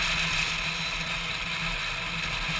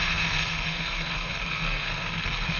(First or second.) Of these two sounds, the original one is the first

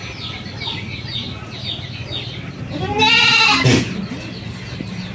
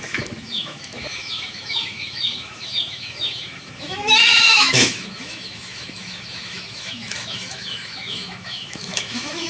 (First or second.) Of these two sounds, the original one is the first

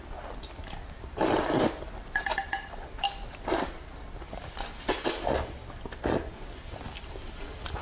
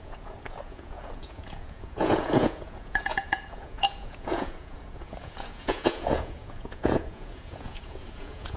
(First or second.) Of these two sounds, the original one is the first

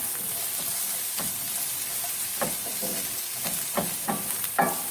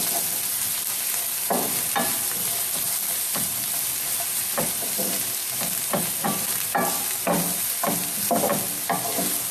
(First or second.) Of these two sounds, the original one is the second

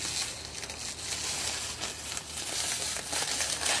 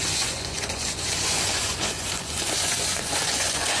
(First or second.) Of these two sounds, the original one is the first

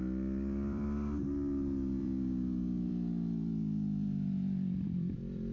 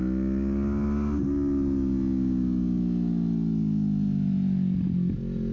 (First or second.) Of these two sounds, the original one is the second